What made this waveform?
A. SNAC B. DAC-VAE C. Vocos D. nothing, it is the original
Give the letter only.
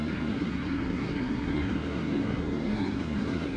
A